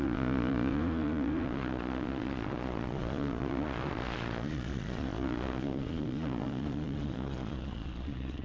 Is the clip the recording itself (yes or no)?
no